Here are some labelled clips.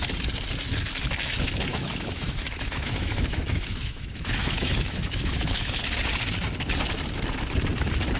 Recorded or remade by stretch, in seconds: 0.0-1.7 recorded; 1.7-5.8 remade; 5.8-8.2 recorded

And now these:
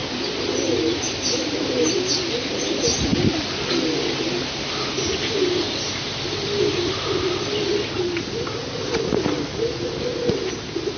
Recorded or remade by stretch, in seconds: 0.0-11.0 recorded

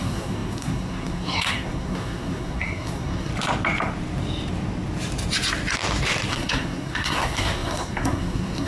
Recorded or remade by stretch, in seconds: 0.0-3.3 remade; 3.3-6.3 recorded; 6.3-8.7 remade